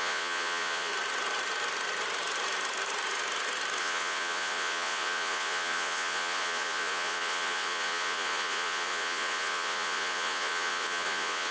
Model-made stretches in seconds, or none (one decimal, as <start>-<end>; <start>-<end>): 0.0-0.9; 3.8-11.5